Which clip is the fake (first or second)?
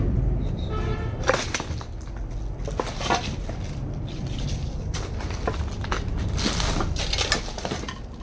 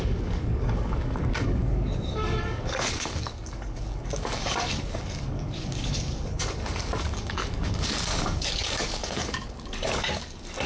second